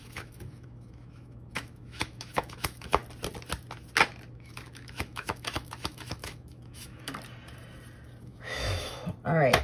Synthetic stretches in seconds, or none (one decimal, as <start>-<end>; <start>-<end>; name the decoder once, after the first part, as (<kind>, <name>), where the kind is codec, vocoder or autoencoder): 0.0-3.0 (autoencoder, DAC-VAE); 4.3-7.1; 8.2-9.0